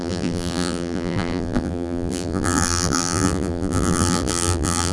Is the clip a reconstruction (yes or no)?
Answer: yes